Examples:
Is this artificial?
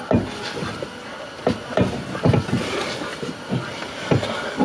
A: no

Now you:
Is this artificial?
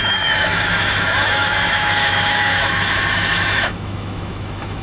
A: yes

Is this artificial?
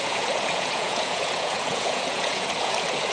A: yes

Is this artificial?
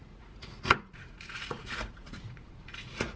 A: yes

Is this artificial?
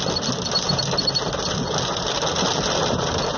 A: no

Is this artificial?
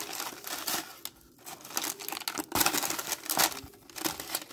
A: no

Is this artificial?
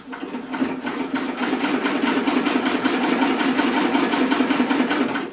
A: no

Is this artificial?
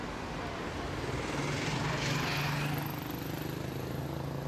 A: no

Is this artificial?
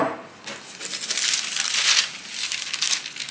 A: no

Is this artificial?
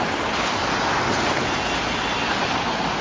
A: no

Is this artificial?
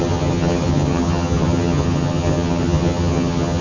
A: yes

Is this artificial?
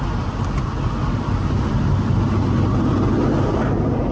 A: no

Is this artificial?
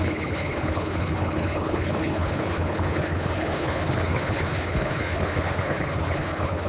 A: yes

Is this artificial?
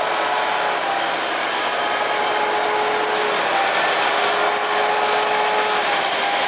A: no